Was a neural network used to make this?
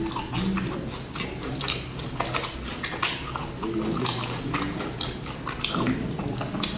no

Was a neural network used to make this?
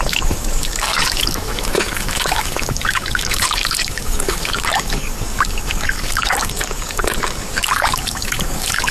yes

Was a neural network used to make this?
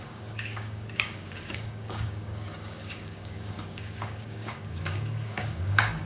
yes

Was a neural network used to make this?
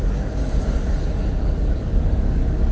yes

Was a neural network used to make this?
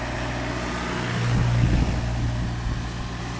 no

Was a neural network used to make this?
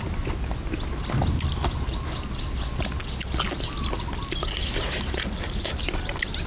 no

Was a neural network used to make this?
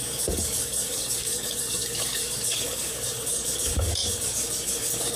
yes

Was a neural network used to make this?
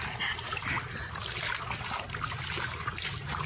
no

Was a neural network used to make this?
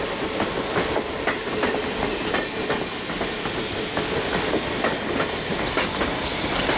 no